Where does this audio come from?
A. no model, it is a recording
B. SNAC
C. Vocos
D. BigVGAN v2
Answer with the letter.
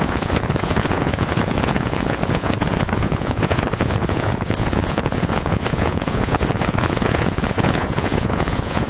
C